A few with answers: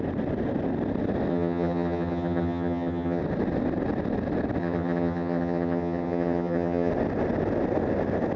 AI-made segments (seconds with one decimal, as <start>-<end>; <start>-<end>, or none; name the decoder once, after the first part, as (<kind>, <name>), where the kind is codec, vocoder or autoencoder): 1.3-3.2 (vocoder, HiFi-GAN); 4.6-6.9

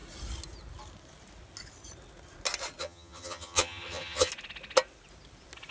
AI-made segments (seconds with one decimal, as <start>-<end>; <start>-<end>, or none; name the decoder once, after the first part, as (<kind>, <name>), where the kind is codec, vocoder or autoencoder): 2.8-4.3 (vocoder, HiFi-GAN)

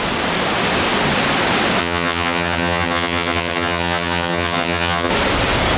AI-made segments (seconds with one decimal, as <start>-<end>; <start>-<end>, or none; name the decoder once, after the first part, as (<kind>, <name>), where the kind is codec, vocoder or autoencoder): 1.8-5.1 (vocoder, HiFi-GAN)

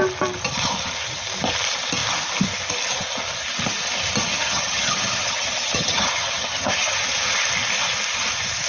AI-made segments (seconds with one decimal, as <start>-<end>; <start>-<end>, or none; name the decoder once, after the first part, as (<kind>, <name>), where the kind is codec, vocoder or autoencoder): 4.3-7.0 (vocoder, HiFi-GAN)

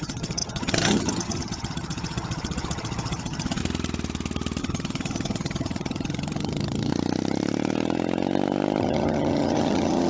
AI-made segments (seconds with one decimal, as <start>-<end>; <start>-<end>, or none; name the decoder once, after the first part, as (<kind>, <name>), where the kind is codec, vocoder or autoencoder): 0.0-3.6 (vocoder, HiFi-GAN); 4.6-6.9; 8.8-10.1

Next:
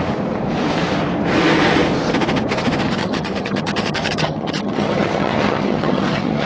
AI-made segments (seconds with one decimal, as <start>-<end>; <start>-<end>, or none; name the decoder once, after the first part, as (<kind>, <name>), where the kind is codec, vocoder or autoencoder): 3.0-6.5 (vocoder, HiFi-GAN)

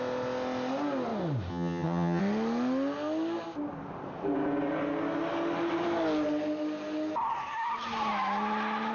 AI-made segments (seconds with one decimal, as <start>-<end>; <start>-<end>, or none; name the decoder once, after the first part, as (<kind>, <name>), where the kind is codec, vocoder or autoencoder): 1.5-2.2 (vocoder, HiFi-GAN)

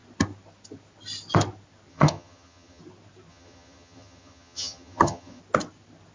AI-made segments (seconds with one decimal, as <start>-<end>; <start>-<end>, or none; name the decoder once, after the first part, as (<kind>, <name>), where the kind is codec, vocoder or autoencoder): 1.9-2.8 (vocoder, HiFi-GAN); 3.3-5.4